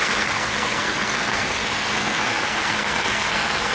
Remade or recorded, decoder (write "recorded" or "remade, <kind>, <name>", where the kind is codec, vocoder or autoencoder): remade, codec, SNAC